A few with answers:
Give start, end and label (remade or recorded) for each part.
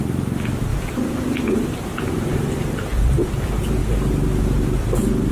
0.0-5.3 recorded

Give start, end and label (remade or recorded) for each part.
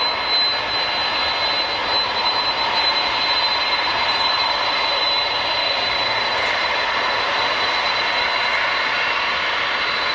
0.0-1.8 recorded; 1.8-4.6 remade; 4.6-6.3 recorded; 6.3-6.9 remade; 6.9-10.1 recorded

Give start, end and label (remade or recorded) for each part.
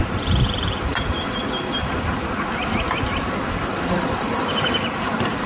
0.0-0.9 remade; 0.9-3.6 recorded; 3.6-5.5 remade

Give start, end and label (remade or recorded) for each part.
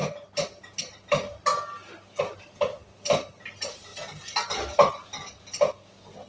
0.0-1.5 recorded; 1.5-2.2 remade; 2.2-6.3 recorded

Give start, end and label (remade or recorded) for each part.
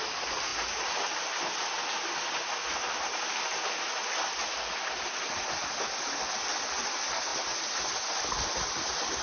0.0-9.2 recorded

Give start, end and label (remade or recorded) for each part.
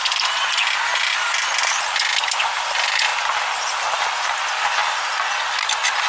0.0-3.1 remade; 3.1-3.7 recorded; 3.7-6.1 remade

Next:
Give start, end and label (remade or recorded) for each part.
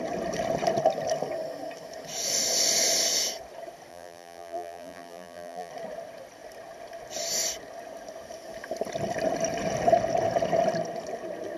0.0-3.9 recorded; 3.9-5.7 remade; 5.7-11.6 recorded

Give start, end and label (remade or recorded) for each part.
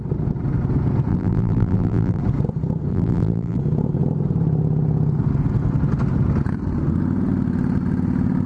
0.0-1.1 recorded; 1.1-2.2 remade; 2.2-2.9 recorded; 2.9-3.6 remade; 3.6-8.5 recorded